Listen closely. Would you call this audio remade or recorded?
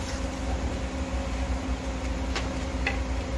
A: recorded